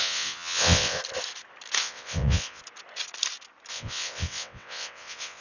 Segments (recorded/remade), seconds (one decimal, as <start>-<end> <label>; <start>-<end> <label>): 0.0-1.0 remade; 1.0-1.8 recorded; 1.8-2.6 remade; 2.6-3.7 recorded; 3.7-5.4 remade